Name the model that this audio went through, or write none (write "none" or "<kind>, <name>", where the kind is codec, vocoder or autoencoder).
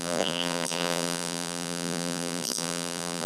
vocoder, BigVGAN v2